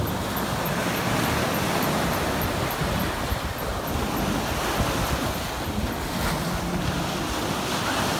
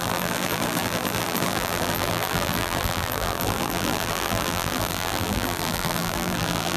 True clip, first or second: first